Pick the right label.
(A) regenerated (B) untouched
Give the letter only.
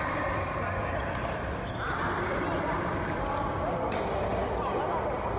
B